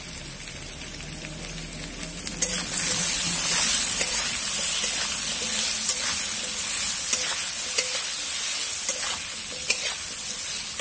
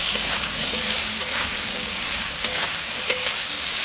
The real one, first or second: first